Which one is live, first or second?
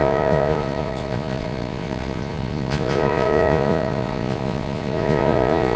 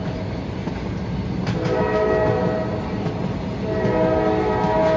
second